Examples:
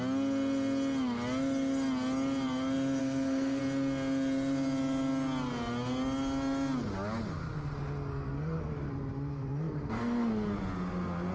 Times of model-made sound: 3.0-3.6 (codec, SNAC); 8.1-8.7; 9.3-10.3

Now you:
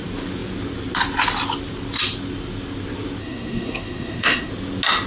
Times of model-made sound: 3.2-4.5 (codec, SNAC)

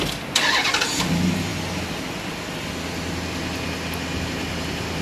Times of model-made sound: none